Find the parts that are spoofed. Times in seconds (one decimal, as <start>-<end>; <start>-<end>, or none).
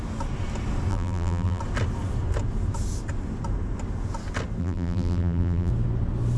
0.9-1.6; 4.6-5.7